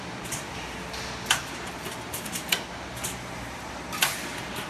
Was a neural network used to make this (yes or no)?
no